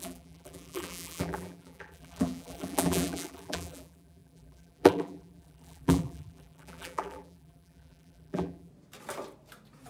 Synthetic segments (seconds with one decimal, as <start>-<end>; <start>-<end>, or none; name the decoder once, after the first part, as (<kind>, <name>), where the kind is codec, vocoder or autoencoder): 0.0-8.7 (vocoder, BigVGAN v2)